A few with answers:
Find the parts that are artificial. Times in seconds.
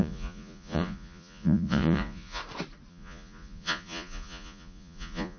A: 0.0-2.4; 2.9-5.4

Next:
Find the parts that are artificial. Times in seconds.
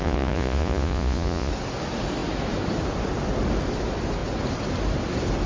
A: 0.0-1.5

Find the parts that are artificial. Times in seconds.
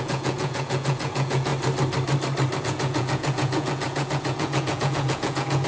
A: 0.0-1.5; 2.6-5.7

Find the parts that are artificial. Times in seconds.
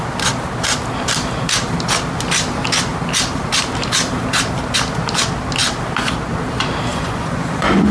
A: 6.9-7.9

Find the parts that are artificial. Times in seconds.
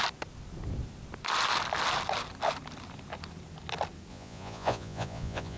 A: 4.1-5.6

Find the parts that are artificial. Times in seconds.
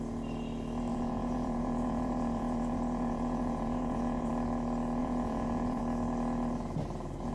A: 0.9-4.3; 5.0-5.8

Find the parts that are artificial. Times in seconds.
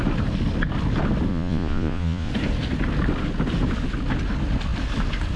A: 1.3-2.3